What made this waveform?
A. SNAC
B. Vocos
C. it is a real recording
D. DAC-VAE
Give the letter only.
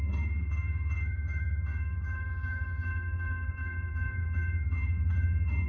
D